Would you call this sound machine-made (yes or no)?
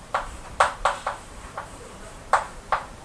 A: yes